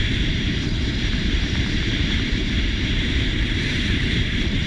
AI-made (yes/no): yes